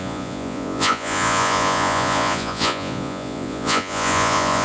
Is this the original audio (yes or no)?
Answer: no